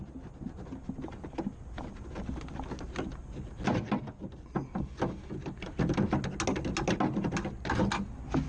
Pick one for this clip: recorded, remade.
recorded